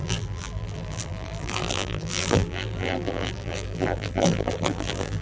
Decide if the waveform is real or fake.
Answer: fake